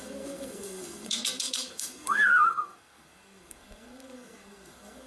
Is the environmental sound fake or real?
fake